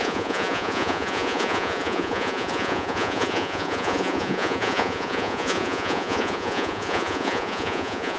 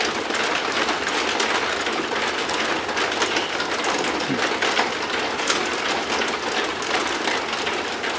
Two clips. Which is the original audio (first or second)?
second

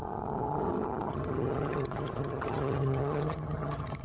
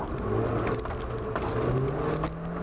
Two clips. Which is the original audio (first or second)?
second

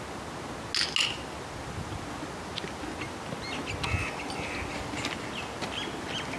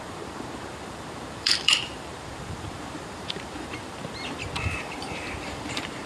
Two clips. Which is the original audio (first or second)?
first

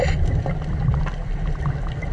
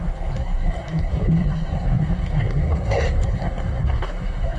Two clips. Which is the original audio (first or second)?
first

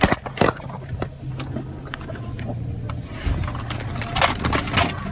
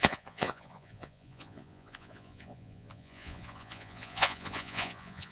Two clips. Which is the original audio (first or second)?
first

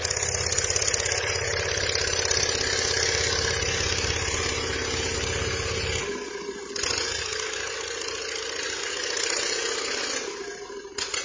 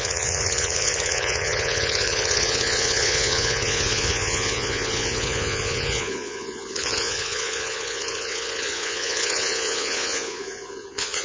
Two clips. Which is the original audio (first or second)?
first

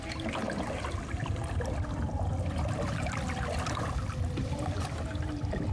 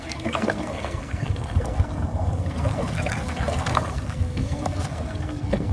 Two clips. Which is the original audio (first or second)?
first